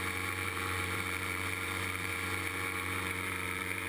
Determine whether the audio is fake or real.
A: fake